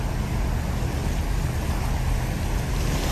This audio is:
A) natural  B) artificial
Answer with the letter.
A